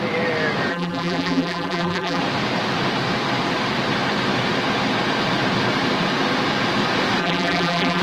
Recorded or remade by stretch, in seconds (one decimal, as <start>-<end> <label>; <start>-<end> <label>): 0.0-0.7 recorded; 0.7-2.2 remade; 2.2-7.2 recorded; 7.2-8.0 remade